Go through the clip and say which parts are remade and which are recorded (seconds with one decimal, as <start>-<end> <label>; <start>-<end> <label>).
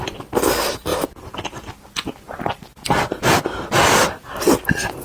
0.0-5.0 recorded